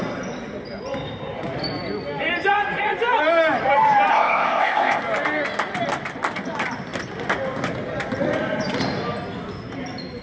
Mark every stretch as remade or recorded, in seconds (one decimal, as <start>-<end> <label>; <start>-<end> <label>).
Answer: 0.0-4.1 recorded; 4.1-5.0 remade; 5.0-10.2 recorded